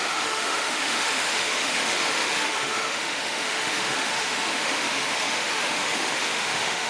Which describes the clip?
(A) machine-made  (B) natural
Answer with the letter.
A